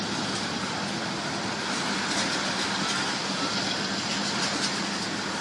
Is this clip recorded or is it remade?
recorded